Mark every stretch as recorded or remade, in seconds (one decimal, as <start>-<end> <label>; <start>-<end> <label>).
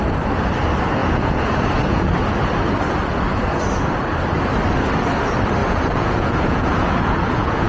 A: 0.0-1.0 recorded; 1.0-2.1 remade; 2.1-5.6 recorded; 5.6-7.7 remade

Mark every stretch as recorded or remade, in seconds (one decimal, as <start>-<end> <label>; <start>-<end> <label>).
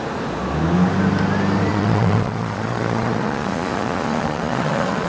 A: 0.0-1.7 recorded; 1.7-5.1 remade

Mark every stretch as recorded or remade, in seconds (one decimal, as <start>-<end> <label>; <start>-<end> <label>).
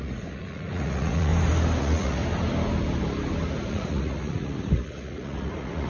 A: 0.0-1.3 remade; 1.3-1.8 recorded; 1.8-2.2 remade; 2.2-3.7 recorded; 3.7-5.9 remade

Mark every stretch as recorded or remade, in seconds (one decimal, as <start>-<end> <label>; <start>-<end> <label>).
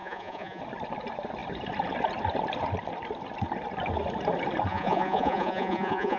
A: 0.0-0.6 remade; 0.6-4.7 recorded; 4.7-6.2 remade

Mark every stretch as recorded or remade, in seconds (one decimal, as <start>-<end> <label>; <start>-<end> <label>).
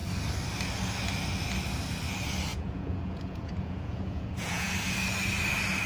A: 0.0-2.5 recorded; 2.5-4.7 remade; 4.7-5.9 recorded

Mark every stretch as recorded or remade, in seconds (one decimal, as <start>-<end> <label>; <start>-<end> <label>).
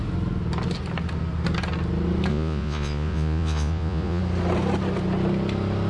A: 0.0-2.3 recorded; 2.3-4.2 remade; 4.2-5.9 recorded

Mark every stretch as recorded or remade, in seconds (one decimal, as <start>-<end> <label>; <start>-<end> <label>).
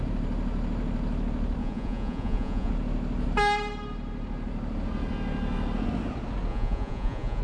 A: 0.0-1.6 recorded; 1.6-2.7 remade; 2.7-6.5 recorded; 6.5-7.4 remade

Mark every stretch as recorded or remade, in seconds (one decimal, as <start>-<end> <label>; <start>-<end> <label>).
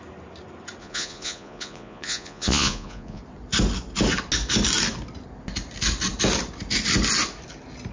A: 0.0-0.8 recorded; 0.8-3.2 remade; 3.2-7.9 recorded